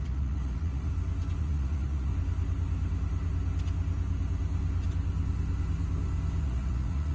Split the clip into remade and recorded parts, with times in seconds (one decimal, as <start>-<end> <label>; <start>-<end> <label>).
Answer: 0.0-0.9 remade; 0.9-1.4 recorded; 1.4-2.1 remade; 2.1-6.4 recorded; 6.4-7.1 remade